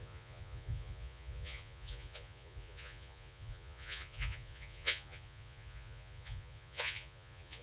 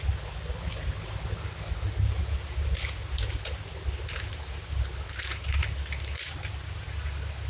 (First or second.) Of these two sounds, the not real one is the first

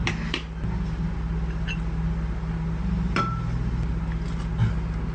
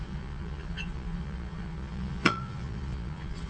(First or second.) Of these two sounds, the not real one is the second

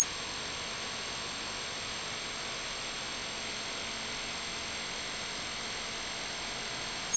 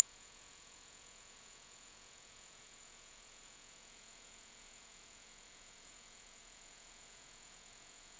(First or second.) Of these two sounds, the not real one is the second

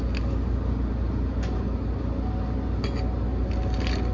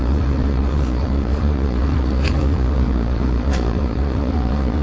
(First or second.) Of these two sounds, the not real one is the second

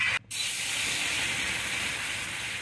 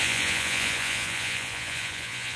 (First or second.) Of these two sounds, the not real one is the second